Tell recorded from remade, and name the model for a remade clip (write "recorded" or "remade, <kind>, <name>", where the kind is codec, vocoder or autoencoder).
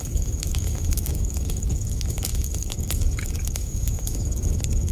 remade, codec, DAC